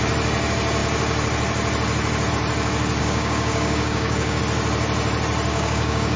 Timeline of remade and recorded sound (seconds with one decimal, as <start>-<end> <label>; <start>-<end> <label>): 0.0-3.0 recorded; 3.0-4.4 remade; 4.4-5.5 recorded; 5.5-6.2 remade